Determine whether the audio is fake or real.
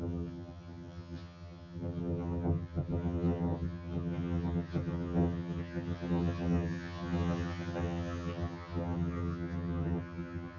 fake